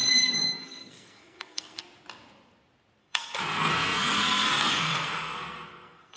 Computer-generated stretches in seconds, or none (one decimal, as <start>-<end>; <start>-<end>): 0.0-1.8; 3.0-6.2